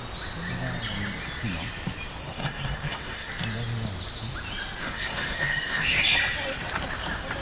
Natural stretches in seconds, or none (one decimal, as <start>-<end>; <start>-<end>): 0.0-2.2; 3.3-4.8; 6.0-7.4